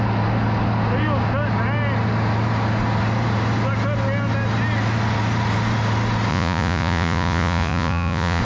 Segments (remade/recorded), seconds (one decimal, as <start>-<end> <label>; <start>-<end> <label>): 0.0-6.3 recorded; 6.3-8.4 remade